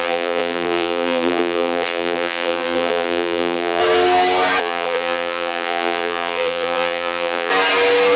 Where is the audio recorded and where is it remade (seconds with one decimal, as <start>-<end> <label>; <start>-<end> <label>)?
0.0-3.8 remade; 3.8-4.6 recorded; 4.6-7.5 remade; 7.5-8.2 recorded